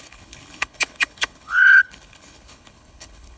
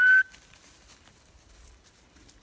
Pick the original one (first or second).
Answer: second